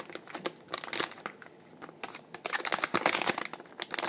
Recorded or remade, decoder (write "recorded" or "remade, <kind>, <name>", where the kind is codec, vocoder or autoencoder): recorded